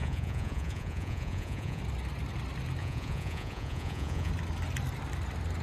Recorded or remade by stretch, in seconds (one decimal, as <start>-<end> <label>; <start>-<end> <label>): 0.0-1.8 remade; 1.8-2.8 recorded; 2.8-4.3 remade; 4.3-5.6 recorded